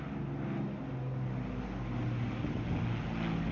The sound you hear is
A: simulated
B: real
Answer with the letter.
B